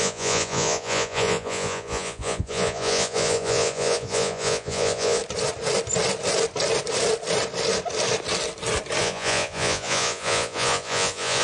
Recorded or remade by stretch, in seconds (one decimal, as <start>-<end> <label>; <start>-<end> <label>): 0.0-5.2 remade; 5.2-9.0 recorded; 9.0-11.4 remade